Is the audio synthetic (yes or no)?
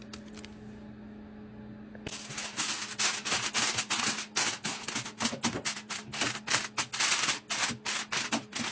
no